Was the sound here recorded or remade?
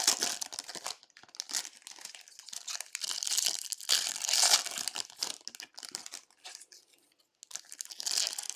recorded